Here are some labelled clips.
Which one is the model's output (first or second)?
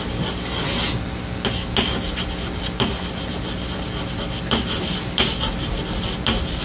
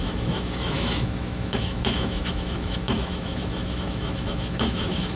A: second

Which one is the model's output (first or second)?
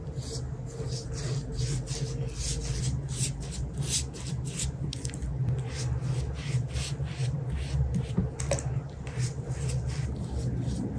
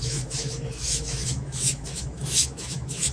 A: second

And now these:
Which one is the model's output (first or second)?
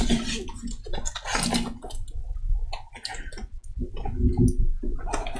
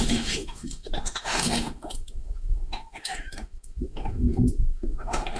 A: second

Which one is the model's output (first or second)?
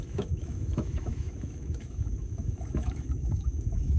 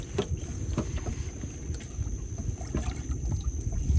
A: first